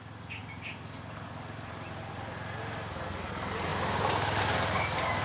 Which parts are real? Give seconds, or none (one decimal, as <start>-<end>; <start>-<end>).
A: 0.0-5.2